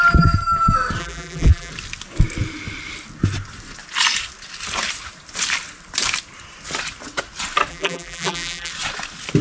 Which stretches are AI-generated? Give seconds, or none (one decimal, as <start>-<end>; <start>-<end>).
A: 1.0-1.7; 7.7-8.7